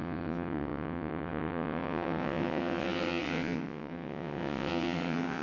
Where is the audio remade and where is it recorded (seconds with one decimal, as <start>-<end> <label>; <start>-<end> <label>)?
0.0-5.4 remade